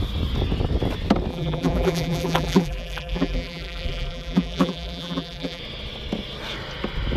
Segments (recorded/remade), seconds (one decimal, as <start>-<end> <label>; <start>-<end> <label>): 0.0-1.3 recorded; 1.3-5.6 remade; 5.6-7.2 recorded